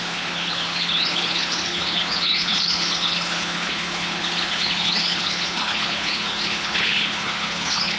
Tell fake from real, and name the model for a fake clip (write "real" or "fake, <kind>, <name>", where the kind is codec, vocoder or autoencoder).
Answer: fake, codec, HILCodec